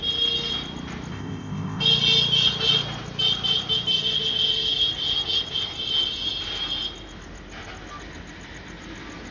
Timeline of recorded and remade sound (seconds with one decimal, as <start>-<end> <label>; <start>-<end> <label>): 0.0-1.1 recorded; 1.1-1.8 remade; 1.8-9.3 recorded